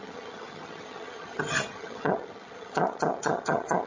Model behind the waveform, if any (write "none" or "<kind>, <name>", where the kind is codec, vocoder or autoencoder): vocoder, HiFi-GAN